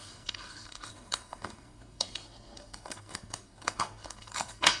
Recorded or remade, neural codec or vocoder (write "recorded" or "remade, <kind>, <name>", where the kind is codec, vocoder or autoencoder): remade, codec, SNAC